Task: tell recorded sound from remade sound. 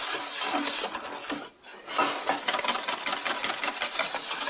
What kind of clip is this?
recorded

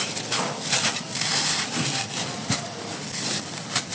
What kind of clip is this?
remade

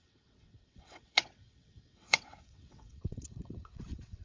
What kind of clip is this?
remade